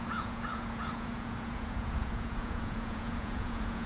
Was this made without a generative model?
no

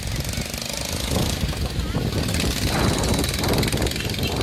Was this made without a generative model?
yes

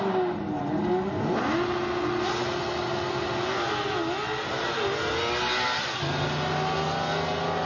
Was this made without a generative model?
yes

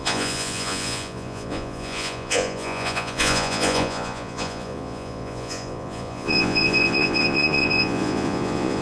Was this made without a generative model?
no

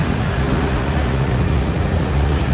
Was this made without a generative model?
no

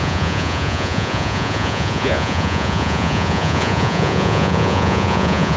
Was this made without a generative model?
no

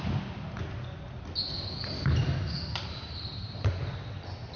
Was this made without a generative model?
yes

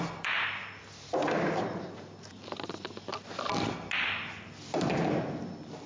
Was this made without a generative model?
yes